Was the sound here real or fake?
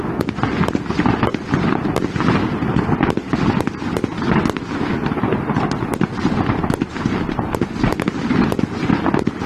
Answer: real